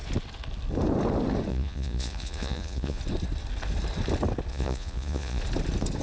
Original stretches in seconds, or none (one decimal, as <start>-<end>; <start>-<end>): 0.0-1.5; 3.0-4.5; 5.4-6.0